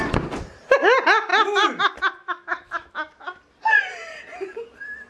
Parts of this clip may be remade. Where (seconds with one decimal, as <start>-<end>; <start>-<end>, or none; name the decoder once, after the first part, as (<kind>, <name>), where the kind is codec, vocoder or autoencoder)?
2.2-3.4 (autoencoder, DAC-VAE)